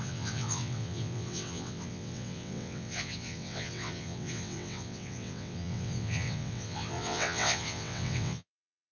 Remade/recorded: remade